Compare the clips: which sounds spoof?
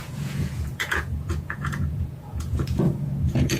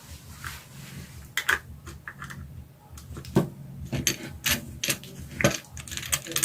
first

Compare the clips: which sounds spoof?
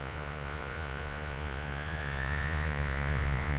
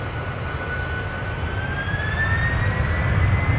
first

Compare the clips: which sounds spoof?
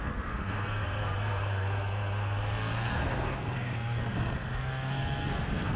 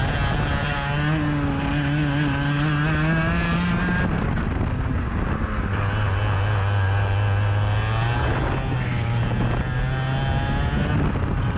first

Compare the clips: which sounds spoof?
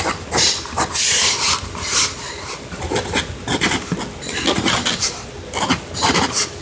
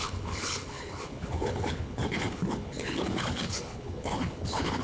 second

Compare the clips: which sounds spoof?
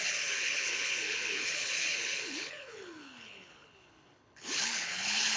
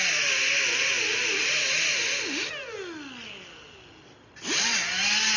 first